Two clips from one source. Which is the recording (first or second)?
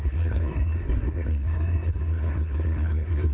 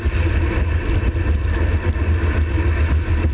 second